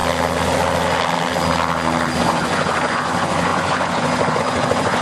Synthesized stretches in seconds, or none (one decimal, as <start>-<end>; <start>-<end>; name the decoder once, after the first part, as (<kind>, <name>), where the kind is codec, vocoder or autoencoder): 2.2-5.0 (vocoder, Vocos)